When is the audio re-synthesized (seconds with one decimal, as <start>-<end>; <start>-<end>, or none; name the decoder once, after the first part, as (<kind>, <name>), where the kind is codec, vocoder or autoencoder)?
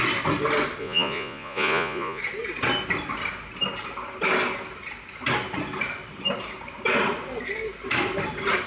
0.8-2.2 (vocoder, Vocos)